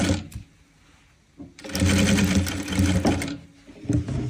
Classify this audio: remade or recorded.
recorded